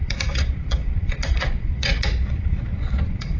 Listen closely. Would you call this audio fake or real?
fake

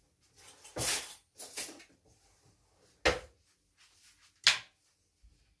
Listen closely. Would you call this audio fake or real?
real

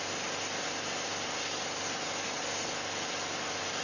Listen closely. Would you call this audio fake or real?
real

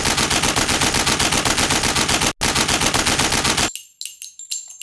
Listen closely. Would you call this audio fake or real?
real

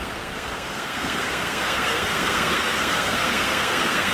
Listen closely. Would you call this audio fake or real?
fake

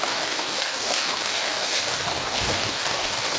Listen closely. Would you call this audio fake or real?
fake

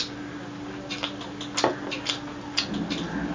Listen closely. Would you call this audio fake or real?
real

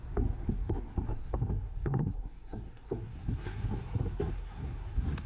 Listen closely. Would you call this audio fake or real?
fake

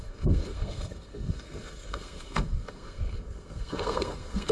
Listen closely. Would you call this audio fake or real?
fake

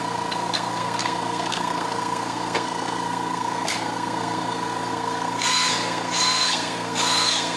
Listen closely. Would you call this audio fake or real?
fake